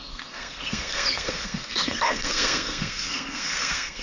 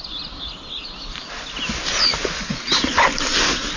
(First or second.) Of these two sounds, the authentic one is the second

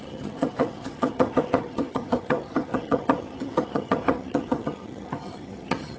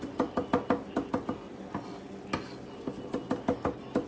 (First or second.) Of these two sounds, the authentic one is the second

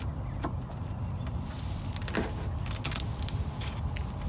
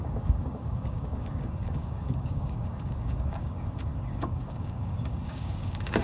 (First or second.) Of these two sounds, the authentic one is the first